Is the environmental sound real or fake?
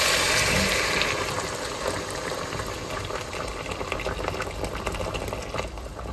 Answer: real